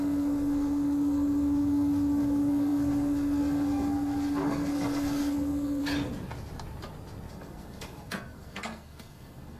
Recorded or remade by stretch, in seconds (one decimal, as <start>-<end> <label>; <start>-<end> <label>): 0.0-5.8 remade; 5.8-7.3 recorded; 7.3-9.6 remade